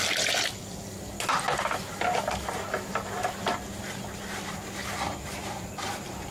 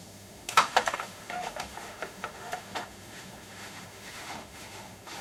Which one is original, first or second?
first